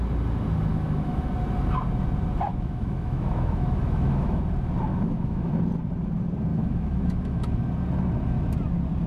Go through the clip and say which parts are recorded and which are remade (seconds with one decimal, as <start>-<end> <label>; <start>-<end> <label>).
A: 0.0-0.7 recorded; 0.7-1.3 remade; 1.3-2.5 recorded; 2.5-4.4 remade; 4.4-4.9 recorded; 4.9-5.5 remade; 5.5-6.5 recorded; 6.5-7.5 remade; 7.5-9.1 recorded